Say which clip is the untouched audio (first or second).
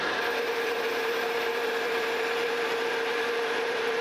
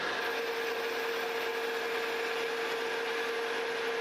second